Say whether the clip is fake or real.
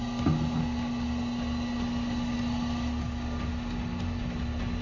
real